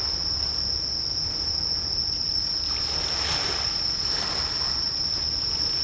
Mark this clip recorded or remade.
recorded